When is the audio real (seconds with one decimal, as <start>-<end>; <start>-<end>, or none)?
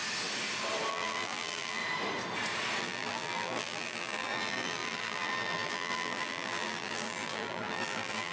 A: 0.0-0.9; 1.8-2.8